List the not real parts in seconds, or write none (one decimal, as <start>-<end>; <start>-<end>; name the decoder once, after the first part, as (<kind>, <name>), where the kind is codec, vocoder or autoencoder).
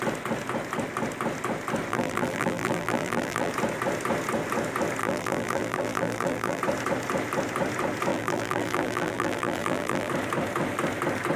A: 1.9-3.5 (vocoder, BigVGAN v2); 5.0-6.6; 8.1-10.1